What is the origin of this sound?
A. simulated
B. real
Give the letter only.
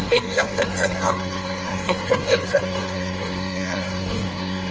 A